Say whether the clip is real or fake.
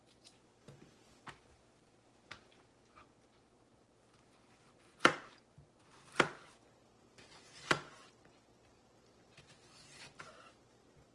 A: real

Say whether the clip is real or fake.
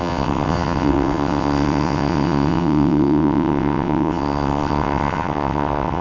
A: fake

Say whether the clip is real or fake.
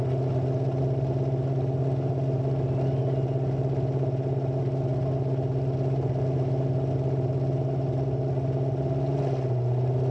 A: real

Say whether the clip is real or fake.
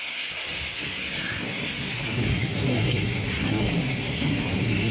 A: fake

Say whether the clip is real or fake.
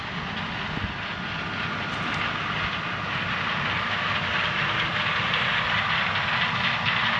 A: real